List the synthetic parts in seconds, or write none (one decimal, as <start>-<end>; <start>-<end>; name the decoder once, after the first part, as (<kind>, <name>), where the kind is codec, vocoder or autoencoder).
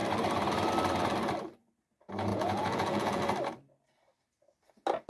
2.3-3.2 (vocoder, Vocos)